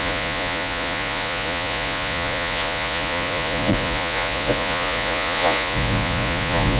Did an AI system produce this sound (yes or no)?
yes